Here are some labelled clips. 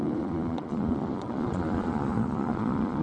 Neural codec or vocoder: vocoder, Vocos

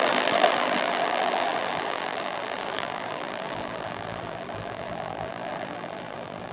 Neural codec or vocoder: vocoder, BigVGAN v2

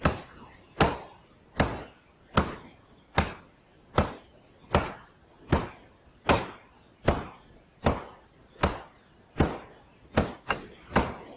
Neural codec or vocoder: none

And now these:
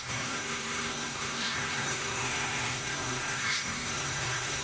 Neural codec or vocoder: codec, SNAC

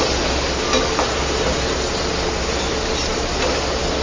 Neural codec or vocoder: none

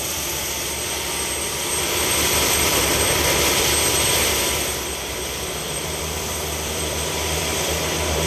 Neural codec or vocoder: vocoder, BigVGAN v2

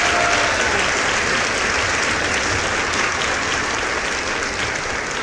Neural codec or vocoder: none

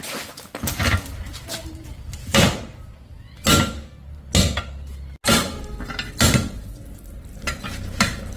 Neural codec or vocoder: none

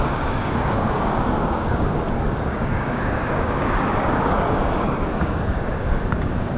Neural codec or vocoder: codec, DAC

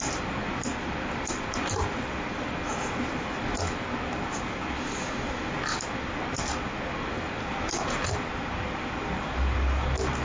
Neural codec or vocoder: none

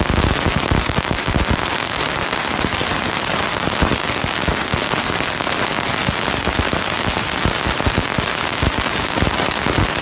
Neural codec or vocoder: none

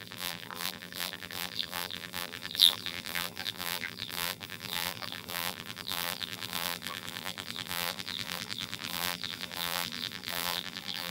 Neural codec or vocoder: vocoder, BigVGAN v2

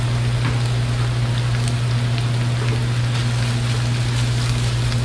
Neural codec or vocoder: none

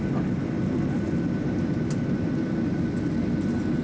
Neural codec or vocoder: none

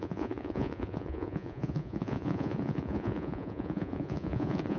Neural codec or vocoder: vocoder, Vocos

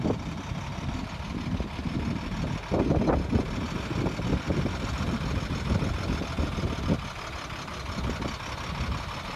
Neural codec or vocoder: none